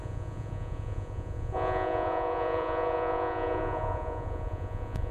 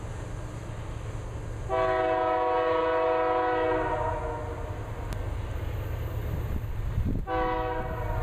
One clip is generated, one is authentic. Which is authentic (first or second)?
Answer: second